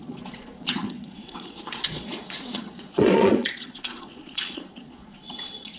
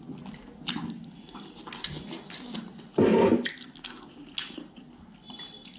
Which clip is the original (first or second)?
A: second